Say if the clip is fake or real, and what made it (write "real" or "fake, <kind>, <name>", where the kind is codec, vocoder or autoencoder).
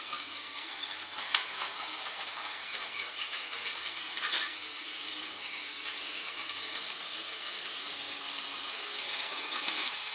fake, codec, SNAC